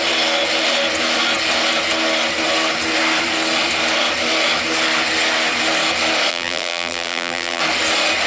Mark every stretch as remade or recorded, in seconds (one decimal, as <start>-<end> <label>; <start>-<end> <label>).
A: 0.0-6.3 recorded; 6.3-7.6 remade; 7.6-8.3 recorded